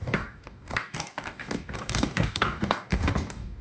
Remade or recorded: remade